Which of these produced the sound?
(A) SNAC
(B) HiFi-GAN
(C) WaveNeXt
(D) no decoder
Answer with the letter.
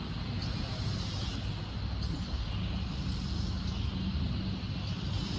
D